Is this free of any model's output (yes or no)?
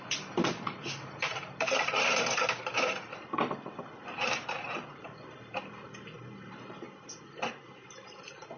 no